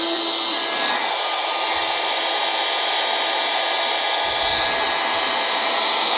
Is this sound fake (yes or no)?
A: no